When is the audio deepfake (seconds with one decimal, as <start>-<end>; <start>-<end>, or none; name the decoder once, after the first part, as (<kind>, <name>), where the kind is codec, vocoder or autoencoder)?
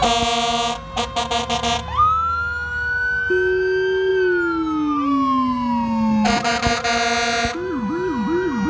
none